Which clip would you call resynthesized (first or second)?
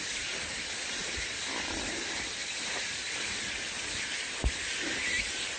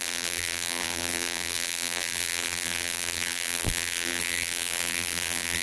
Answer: second